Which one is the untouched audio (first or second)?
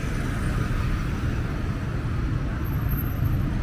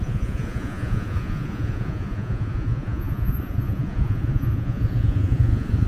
first